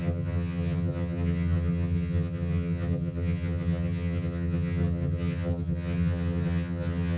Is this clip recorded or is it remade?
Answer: remade